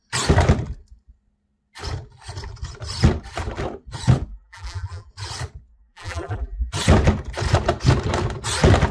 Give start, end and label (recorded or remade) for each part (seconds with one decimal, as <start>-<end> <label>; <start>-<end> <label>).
0.0-4.3 recorded; 4.3-5.1 remade; 5.1-5.7 recorded; 5.7-6.7 remade; 6.7-8.9 recorded